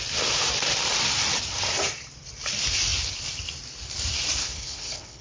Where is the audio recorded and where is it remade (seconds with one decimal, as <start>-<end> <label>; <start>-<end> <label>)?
0.0-4.4 recorded; 4.4-5.2 remade